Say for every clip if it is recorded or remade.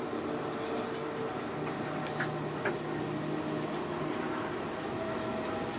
recorded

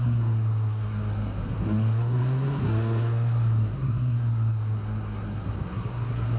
remade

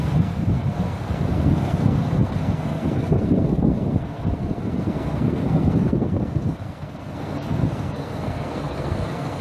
remade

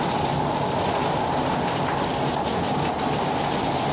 recorded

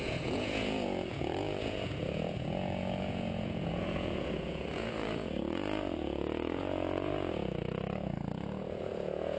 remade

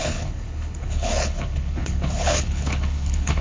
remade